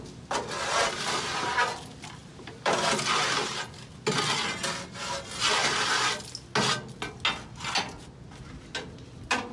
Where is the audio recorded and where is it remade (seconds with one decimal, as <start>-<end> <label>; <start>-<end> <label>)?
0.0-2.2 recorded; 2.2-2.9 remade; 2.9-9.5 recorded